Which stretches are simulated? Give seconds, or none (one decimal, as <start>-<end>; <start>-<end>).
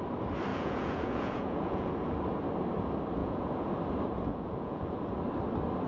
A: 0.5-1.9; 3.2-3.7; 4.3-5.0